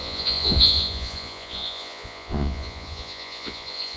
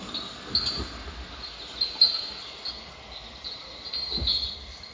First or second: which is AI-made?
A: first